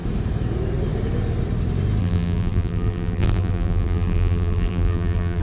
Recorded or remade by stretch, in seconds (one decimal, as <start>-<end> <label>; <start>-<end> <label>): 0.0-2.0 recorded; 2.0-5.4 remade